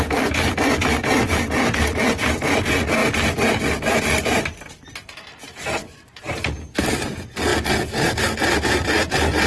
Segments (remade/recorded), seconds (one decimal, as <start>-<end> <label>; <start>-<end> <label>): 0.0-5.8 recorded; 5.8-6.5 remade; 6.5-9.5 recorded